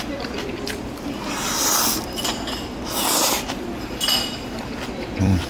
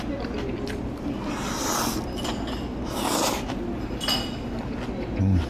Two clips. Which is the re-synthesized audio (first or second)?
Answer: first